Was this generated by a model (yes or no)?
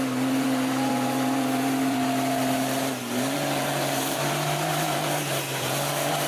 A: yes